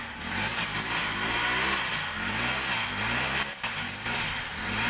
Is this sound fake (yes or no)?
no